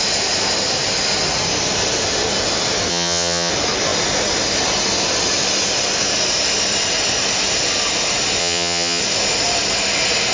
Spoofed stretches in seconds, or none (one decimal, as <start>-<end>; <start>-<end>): 2.9-3.5; 8.4-9.0